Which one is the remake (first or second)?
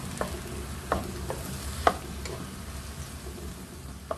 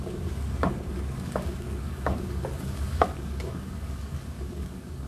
second